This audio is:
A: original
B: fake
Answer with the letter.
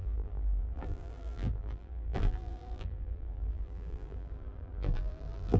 B